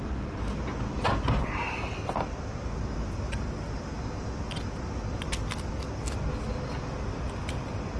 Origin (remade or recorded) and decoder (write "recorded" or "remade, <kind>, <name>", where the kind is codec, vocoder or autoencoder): recorded